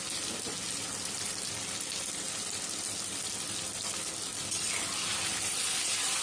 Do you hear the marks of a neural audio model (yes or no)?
no